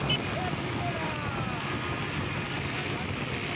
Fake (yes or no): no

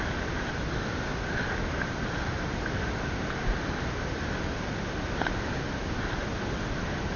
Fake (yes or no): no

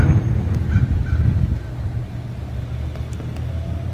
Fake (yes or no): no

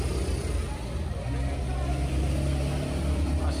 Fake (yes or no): no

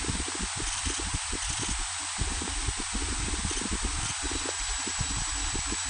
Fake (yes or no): no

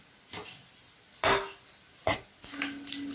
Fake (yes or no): no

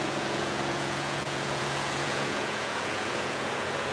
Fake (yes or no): yes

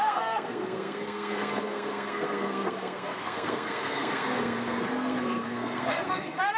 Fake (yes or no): yes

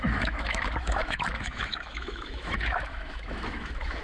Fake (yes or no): yes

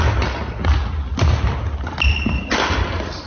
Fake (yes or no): no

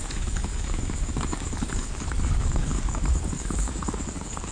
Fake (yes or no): yes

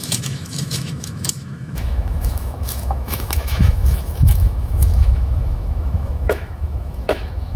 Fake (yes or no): yes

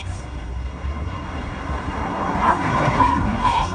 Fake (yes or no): yes